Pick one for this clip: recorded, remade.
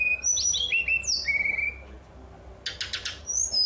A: recorded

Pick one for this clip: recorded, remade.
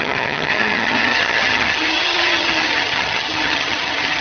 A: remade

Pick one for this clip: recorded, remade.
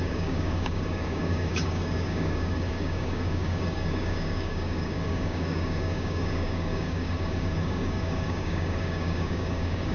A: remade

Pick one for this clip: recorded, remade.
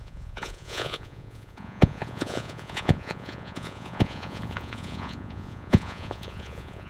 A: remade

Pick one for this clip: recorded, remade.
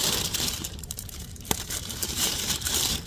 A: remade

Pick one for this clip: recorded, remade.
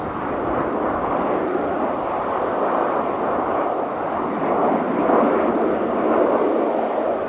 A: recorded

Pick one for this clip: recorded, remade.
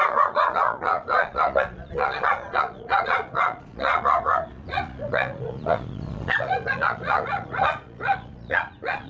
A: remade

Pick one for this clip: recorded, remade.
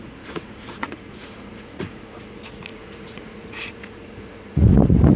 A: remade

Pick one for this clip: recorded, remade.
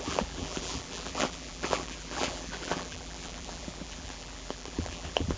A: remade